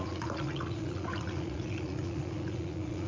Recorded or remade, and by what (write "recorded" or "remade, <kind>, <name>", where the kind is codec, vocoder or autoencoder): remade, vocoder, Vocos